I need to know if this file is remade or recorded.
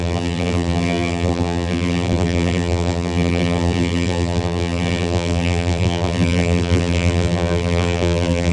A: remade